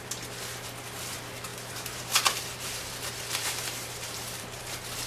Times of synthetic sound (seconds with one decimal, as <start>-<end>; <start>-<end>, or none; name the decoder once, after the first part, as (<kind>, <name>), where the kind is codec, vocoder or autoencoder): 1.5-4.6 (vocoder, BigVGAN v2)